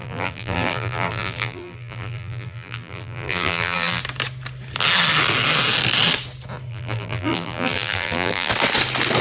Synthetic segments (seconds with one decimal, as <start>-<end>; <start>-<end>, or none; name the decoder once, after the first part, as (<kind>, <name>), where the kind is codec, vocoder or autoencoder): 0.0-4.0 (vocoder, BigVGAN v2); 6.7-8.5